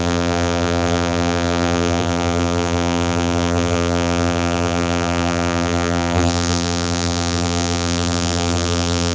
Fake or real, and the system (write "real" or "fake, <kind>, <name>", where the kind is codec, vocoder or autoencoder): fake, vocoder, BigVGAN v2